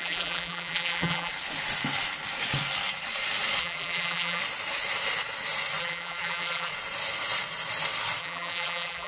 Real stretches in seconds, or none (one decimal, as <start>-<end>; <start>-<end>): 1.3-3.6; 4.4-5.8; 6.7-8.2